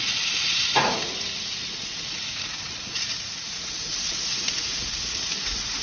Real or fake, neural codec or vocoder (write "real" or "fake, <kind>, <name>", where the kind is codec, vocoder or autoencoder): fake, vocoder, Vocos